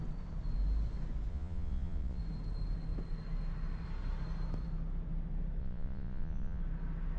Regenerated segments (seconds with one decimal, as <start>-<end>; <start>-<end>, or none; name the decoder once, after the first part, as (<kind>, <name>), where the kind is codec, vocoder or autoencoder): 1.3-2.2 (vocoder, Vocos); 5.6-6.6

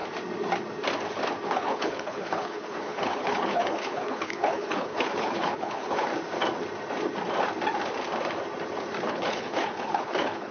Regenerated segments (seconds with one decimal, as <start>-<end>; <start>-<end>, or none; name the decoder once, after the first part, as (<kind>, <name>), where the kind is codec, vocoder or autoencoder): 1.5-6.1 (codec, HILCodec); 9.1-10.5

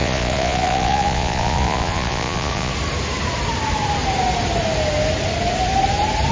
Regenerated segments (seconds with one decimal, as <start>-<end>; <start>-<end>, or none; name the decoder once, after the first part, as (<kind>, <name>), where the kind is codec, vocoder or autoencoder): 0.0-2.7 (vocoder, Vocos)

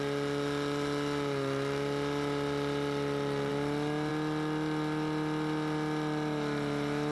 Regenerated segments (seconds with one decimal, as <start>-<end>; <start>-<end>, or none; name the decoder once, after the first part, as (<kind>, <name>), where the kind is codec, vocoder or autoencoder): none

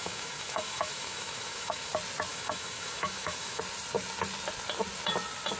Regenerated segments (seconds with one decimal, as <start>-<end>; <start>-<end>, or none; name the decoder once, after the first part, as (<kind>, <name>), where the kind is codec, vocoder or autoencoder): 0.0-1.9 (autoencoder, DAC-VAE); 2.3-3.6